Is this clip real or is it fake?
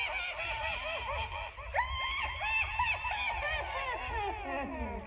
real